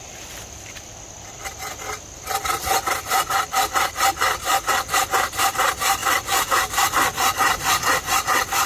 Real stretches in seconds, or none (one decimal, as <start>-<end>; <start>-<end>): 0.9-2.4